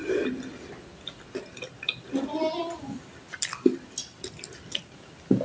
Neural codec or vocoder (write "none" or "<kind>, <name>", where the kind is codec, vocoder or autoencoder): none